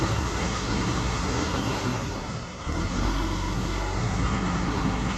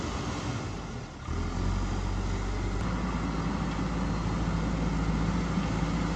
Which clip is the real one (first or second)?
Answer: second